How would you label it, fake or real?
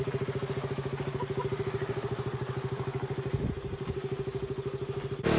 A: real